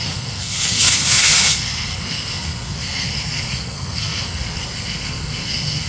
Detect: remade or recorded remade